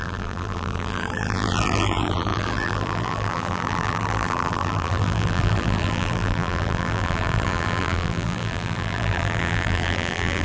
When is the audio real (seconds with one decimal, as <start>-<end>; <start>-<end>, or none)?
none